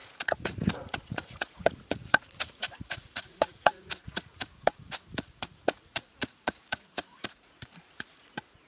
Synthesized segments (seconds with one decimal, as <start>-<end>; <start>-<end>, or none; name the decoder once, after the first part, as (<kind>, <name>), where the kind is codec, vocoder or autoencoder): 0.0-8.7 (vocoder, Vocos)